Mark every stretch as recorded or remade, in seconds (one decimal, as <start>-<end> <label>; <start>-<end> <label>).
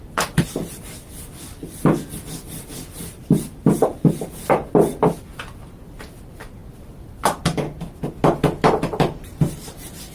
0.0-10.1 recorded